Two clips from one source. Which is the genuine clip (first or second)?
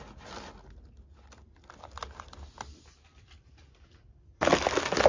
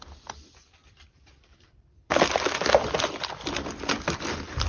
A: first